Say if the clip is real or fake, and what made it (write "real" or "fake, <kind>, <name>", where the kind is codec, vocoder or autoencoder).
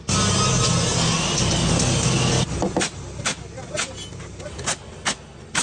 real